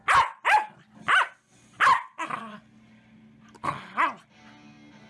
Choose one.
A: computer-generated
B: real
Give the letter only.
B